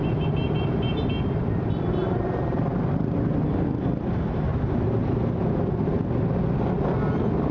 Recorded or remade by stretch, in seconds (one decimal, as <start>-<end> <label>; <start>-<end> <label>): 0.0-7.5 recorded